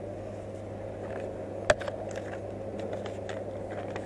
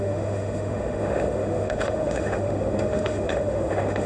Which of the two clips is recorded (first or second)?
first